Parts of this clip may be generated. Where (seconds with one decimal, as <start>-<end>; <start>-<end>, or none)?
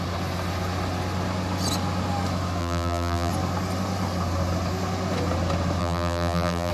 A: 2.6-3.3; 5.8-6.7